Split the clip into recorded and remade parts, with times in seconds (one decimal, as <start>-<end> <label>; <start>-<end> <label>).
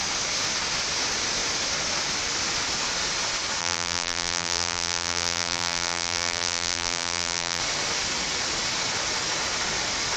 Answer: 0.0-3.6 recorded; 3.6-7.6 remade; 7.6-10.2 recorded